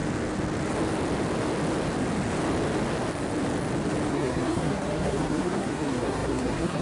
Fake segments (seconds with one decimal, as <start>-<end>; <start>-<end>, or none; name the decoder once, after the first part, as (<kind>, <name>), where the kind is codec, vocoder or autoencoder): 4.1-6.8 (codec, SNAC)

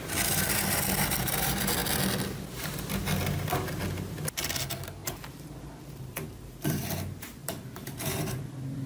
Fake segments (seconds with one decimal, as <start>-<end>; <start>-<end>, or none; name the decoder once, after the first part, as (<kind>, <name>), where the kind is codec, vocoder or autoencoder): 5.0-6.8 (vocoder, BigVGAN v2); 7.4-8.9

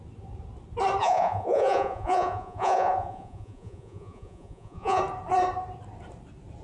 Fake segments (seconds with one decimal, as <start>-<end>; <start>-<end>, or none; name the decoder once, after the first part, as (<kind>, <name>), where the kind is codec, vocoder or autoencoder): 1.0-5.0 (vocoder, Vocos)

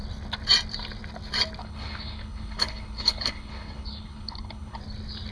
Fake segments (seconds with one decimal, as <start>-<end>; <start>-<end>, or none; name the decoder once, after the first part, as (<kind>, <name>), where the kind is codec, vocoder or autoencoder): 1.6-4.8 (codec, HILCodec)

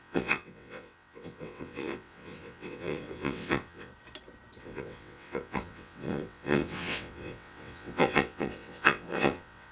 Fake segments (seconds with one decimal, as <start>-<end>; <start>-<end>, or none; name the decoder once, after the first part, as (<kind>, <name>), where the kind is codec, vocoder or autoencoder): 0.0-3.9 (vocoder, WaveNeXt); 4.6-9.7

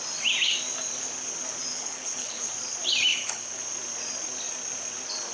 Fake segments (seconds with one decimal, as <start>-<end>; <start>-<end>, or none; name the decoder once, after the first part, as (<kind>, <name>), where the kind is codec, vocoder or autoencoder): 1.7-2.5 (codec, HILCodec); 3.1-3.6

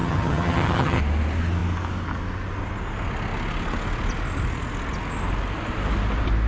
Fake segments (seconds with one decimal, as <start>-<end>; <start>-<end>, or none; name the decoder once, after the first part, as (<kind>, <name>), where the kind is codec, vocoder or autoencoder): 0.0-1.0 (vocoder, HiFi-GAN)

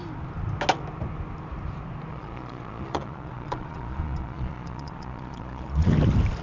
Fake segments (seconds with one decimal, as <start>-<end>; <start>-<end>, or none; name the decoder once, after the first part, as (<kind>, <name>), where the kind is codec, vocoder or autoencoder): 2.1-5.9 (vocoder, Vocos)